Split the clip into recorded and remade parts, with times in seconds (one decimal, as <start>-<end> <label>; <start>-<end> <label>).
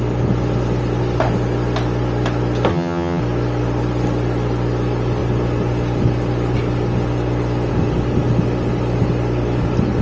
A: 0.0-2.7 recorded; 2.7-3.2 remade; 3.2-10.0 recorded